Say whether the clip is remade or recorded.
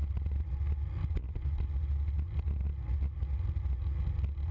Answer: recorded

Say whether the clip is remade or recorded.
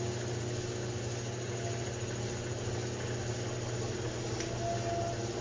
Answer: recorded